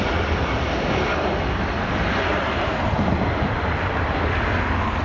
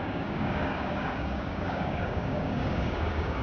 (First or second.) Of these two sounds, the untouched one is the first